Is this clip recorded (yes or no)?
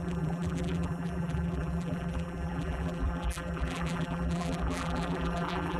no